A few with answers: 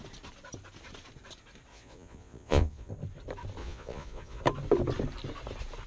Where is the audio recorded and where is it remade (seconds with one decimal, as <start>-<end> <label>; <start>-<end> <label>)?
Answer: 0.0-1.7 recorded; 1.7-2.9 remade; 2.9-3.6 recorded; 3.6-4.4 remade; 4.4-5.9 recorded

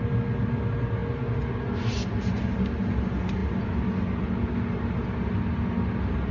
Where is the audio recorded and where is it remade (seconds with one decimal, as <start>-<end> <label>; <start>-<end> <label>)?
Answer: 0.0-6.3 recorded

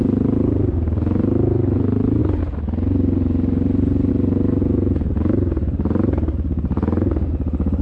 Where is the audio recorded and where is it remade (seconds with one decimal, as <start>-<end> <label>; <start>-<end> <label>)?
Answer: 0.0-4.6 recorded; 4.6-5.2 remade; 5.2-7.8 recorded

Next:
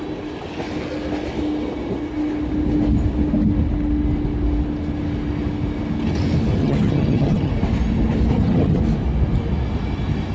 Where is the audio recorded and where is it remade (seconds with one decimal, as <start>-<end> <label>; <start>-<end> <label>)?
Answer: 0.0-6.6 recorded; 6.6-7.5 remade; 7.5-8.3 recorded; 8.3-8.8 remade; 8.8-10.3 recorded

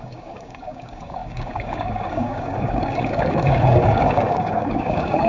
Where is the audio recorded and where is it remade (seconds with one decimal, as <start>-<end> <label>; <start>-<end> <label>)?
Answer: 0.0-5.3 remade